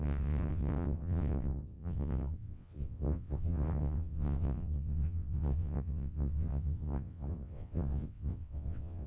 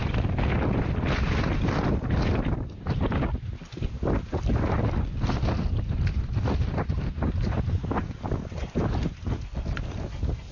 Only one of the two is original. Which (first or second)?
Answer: second